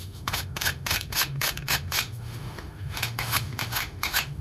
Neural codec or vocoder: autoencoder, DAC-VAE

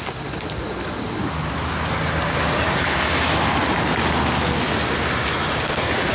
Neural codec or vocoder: none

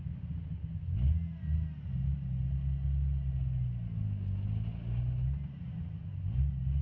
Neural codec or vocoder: none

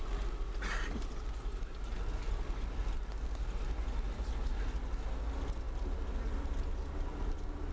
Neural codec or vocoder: none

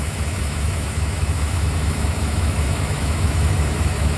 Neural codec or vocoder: autoencoder, DAC-VAE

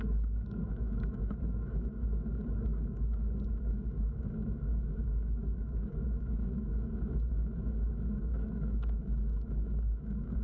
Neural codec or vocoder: autoencoder, DAC-VAE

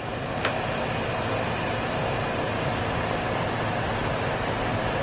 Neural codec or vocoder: none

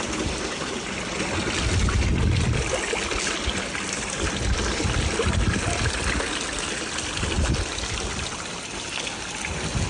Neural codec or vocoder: none